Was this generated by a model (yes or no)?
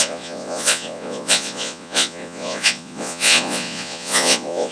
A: yes